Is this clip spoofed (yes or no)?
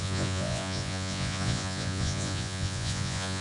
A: yes